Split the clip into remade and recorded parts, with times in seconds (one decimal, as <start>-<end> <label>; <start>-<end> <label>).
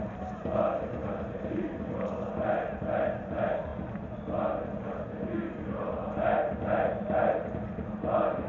0.0-8.5 recorded